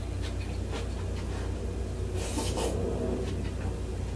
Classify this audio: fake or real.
real